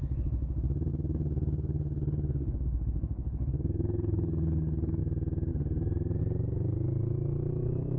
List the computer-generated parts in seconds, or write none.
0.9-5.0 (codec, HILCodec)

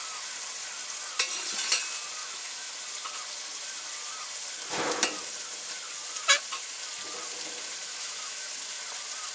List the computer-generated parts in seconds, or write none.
2.2-2.7 (autoencoder, DAC-VAE); 7.8-8.5

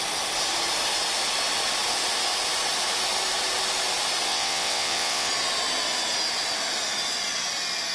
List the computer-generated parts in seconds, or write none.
4.3-5.3 (vocoder, WaveNeXt)

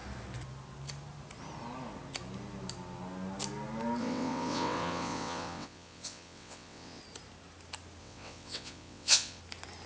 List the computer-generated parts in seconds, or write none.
4.0-7.0 (vocoder, WaveNeXt); 8.0-9.4

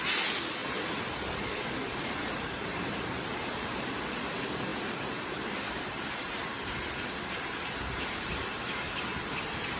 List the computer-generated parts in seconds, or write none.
0.0-9.8 (vocoder, BigVGAN v2)

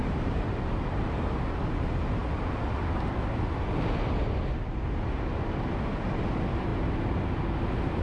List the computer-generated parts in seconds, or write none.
0.0-1.6 (vocoder, BigVGAN v2)